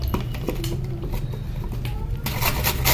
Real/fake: real